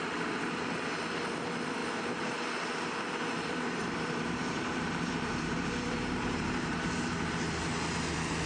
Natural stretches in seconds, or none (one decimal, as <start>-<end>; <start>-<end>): 0.0-1.8; 6.9-8.5

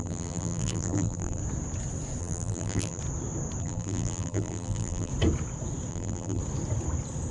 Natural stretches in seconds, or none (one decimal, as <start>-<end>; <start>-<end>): 1.4-2.2; 3.0-3.6; 5.1-5.9; 6.4-7.3

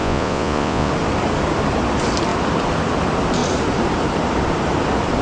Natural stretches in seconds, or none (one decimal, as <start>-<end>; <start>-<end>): 0.9-5.2

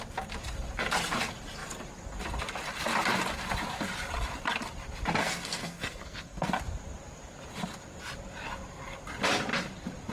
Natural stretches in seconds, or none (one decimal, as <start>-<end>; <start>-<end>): 0.0-5.2; 6.5-10.1

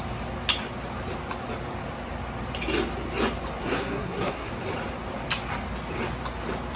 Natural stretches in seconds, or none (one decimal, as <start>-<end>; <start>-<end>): 0.0-3.6; 4.5-6.8

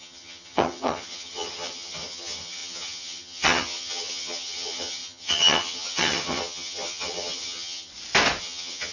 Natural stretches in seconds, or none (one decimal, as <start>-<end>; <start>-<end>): 7.9-8.4